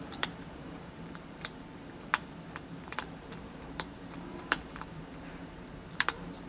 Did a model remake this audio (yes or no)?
yes